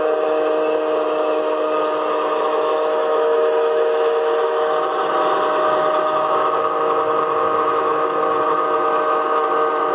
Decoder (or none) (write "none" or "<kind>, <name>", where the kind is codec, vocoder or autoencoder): autoencoder, DAC-VAE